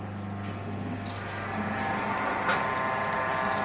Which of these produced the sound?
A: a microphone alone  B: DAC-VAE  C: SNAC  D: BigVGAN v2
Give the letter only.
A